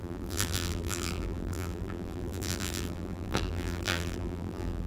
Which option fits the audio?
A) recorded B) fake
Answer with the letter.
B